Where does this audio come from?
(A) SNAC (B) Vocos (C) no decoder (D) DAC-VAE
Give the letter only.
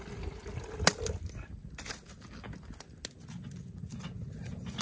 C